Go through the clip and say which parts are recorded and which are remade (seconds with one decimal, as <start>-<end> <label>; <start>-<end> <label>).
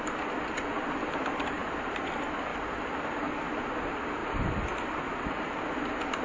0.0-1.6 recorded; 1.6-2.1 remade; 2.1-2.5 recorded; 2.5-3.3 remade; 3.3-4.2 recorded; 4.2-5.5 remade; 5.5-6.2 recorded